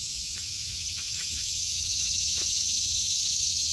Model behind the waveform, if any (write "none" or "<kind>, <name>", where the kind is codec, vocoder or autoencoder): autoencoder, DAC-VAE